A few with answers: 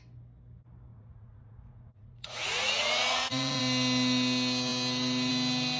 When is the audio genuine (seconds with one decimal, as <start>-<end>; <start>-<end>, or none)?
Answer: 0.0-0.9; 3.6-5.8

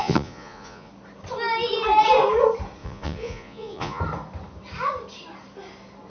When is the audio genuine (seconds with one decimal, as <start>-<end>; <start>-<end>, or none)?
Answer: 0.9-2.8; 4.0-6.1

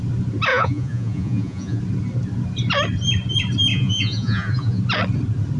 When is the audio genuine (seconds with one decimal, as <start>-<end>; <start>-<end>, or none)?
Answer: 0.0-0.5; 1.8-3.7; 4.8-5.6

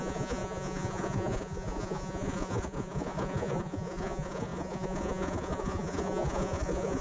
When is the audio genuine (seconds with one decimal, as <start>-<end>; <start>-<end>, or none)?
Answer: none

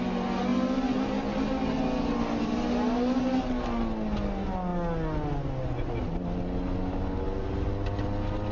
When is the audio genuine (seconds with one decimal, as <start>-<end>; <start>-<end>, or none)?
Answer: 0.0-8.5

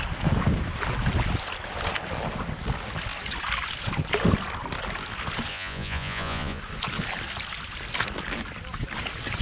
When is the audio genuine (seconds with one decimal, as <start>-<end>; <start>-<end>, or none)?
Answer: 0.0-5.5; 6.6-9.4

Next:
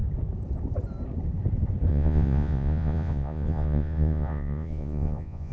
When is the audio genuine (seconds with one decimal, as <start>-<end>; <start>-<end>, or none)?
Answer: 0.0-1.9